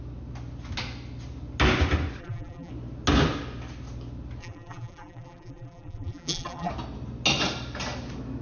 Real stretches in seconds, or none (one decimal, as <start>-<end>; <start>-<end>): 0.0-2.2; 2.7-4.4; 6.7-8.4